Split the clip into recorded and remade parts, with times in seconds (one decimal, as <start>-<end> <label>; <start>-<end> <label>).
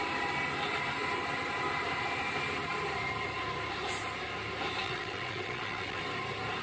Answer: 0.0-4.8 recorded; 4.8-6.0 remade; 6.0-6.6 recorded